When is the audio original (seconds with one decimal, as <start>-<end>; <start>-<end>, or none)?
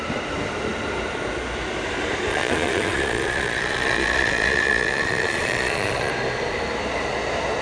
0.0-2.3; 6.1-7.6